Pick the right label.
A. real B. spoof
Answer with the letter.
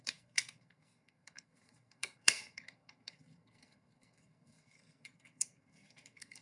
B